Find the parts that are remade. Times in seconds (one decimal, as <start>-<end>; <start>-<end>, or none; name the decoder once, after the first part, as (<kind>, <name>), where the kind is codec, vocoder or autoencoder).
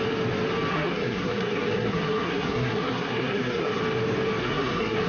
0.7-3.8 (codec, SNAC); 4.4-5.1